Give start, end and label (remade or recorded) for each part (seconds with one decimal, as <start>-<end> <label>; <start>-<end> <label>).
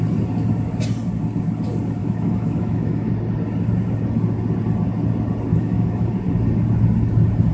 0.0-2.0 recorded; 2.0-3.1 remade; 3.1-5.5 recorded; 5.5-6.1 remade; 6.1-7.5 recorded